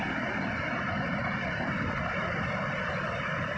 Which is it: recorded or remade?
recorded